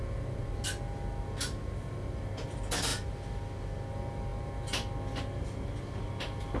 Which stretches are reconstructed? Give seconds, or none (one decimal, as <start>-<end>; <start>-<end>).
none